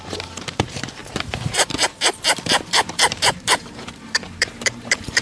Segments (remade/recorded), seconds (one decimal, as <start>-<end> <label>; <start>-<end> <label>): 0.0-5.2 remade